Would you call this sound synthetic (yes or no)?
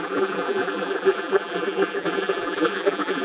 yes